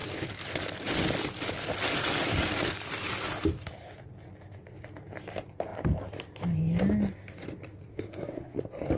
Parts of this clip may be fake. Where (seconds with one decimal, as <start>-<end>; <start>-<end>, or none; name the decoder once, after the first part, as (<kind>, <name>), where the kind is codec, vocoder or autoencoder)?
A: 7.9-8.6 (codec, SNAC)